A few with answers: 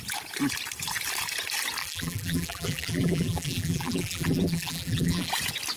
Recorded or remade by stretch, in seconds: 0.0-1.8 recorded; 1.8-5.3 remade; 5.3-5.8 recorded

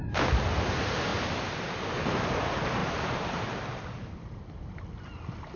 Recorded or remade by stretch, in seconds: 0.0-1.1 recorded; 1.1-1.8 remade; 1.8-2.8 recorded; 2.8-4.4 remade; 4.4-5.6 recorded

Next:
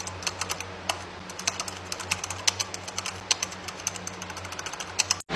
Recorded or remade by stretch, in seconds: 0.0-5.4 recorded

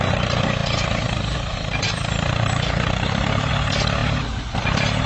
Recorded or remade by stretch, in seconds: 0.0-0.6 recorded; 0.6-3.5 remade; 3.5-5.1 recorded

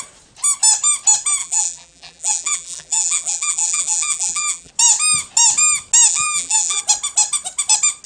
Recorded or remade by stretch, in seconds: 0.0-1.4 recorded; 1.4-4.7 remade; 4.7-6.1 recorded; 6.1-6.8 remade; 6.8-8.1 recorded

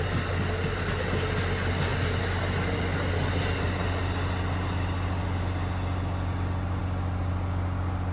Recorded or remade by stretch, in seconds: 0.0-8.1 recorded

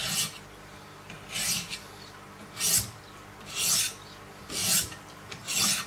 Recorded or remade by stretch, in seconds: 0.0-4.6 recorded; 4.6-5.5 remade; 5.5-5.9 recorded